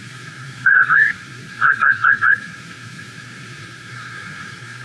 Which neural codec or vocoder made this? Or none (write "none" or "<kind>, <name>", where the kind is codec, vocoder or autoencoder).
codec, SNAC